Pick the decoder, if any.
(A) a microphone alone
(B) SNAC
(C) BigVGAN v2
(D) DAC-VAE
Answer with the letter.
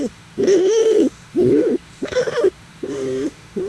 D